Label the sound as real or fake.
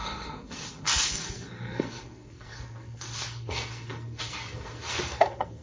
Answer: fake